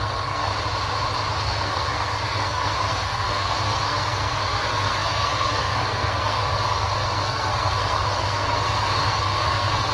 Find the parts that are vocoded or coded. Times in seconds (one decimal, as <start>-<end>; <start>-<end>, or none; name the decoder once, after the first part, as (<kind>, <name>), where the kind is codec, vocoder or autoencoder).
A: 0.0-0.5 (codec, SNAC); 1.4-9.9